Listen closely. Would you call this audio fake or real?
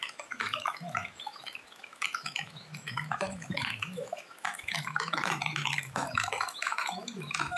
fake